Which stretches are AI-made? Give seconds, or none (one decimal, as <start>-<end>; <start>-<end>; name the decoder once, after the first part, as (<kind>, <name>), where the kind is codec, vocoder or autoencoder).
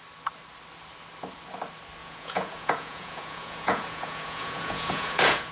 2.0-5.5 (vocoder, Vocos)